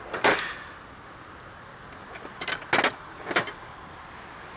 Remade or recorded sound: recorded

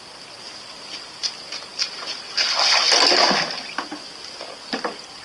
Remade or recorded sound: recorded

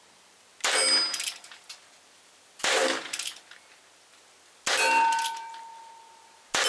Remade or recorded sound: recorded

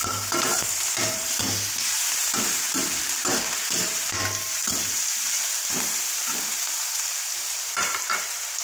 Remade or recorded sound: remade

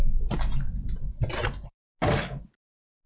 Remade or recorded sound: recorded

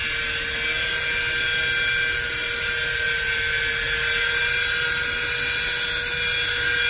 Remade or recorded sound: recorded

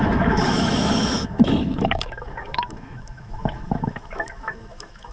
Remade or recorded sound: remade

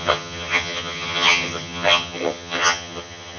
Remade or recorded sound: remade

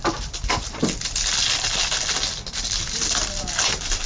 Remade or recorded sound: recorded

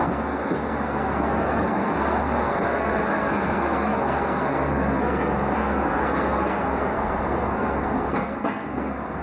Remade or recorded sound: remade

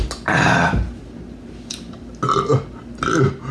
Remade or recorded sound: recorded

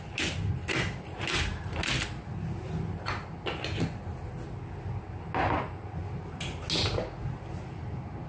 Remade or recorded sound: recorded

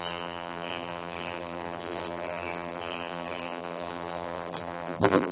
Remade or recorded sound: remade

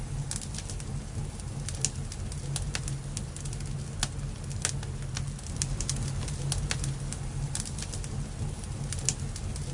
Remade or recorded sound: recorded